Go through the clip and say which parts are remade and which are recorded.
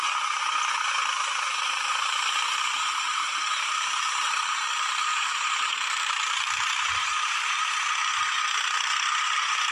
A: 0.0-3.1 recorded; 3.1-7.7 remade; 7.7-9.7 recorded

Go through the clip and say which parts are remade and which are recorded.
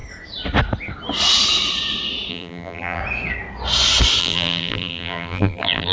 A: 0.0-2.3 recorded; 2.3-3.0 remade; 3.0-4.2 recorded; 4.2-5.9 remade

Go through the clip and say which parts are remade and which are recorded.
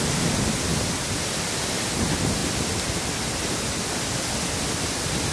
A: 0.0-5.3 recorded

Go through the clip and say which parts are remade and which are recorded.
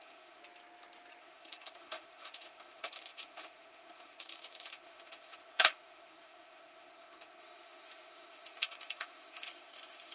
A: 0.0-0.4 remade; 0.4-1.2 recorded; 1.2-10.1 remade